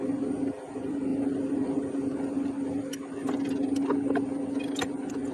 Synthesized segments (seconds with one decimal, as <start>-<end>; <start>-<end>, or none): none